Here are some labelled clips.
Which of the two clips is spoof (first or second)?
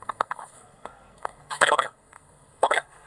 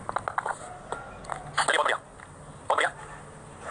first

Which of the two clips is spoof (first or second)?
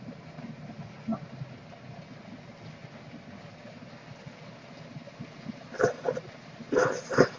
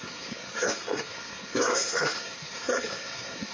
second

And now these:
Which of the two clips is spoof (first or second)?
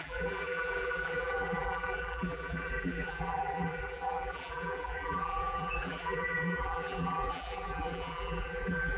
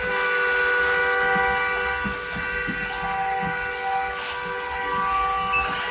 first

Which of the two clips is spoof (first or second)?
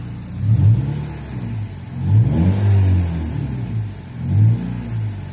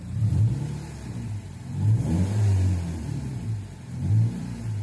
second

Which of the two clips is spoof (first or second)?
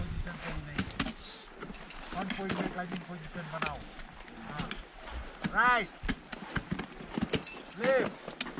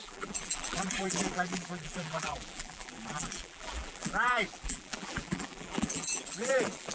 second